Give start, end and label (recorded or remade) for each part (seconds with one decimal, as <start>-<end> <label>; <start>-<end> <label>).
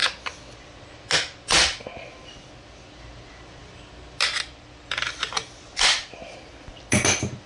0.0-7.5 recorded